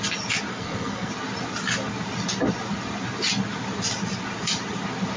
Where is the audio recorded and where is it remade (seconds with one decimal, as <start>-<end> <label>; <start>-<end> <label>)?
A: 0.0-0.5 recorded; 0.5-1.1 remade; 1.1-5.2 recorded